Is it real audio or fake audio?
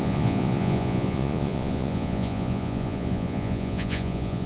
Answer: fake